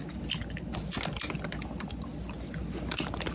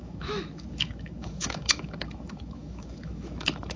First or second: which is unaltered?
first